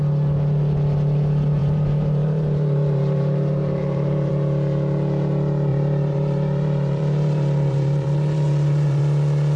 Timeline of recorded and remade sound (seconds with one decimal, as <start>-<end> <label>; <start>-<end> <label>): 0.0-1.6 recorded; 1.6-4.3 remade; 4.3-5.7 recorded; 5.7-9.0 remade; 9.0-9.6 recorded